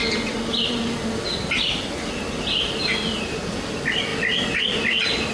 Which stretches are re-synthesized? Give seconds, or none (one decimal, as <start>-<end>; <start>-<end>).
none

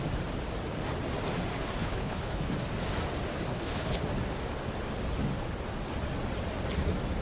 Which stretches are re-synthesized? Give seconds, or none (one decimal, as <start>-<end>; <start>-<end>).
1.8-2.5; 3.5-4.0

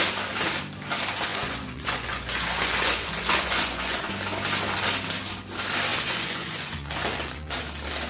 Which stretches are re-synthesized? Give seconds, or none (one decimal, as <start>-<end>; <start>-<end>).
1.3-4.1; 5.9-7.6

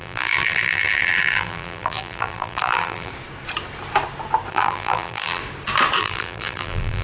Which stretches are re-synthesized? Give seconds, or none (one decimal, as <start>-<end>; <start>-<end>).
0.0-3.1; 4.5-5.4; 6.0-7.0

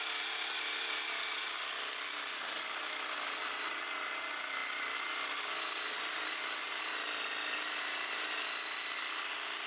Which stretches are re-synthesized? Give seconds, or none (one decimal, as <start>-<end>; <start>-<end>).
none

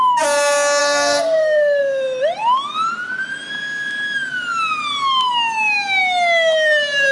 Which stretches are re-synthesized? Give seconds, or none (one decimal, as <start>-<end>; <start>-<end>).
0.8-1.8

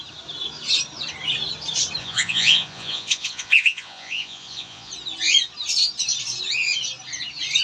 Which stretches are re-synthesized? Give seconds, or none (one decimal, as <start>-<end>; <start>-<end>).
2.0-4.9